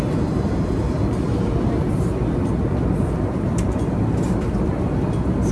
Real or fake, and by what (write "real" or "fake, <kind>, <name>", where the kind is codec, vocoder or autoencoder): real